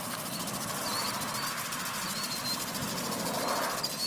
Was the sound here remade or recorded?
recorded